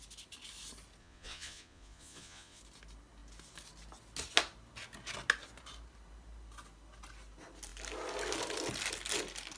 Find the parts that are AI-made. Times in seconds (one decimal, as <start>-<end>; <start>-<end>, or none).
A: 1.0-2.6